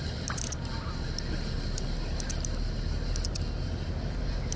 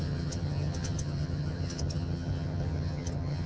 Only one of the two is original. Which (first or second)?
first